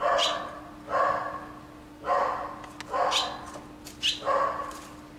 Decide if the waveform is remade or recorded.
recorded